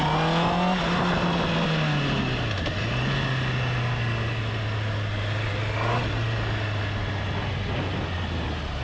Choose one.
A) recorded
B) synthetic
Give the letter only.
A